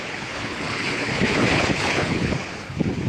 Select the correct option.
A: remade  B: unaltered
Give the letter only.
A